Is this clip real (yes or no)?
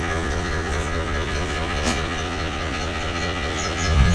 no